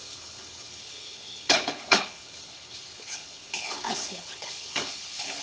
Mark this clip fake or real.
fake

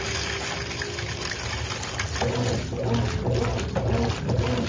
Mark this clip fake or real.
real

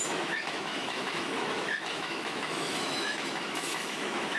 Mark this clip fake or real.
fake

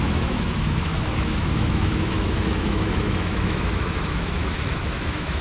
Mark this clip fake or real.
fake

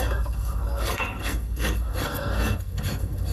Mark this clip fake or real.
fake